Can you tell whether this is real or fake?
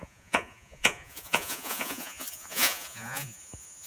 fake